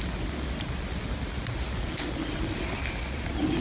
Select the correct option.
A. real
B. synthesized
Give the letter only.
A